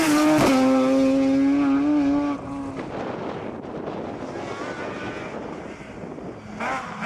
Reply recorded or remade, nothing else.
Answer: recorded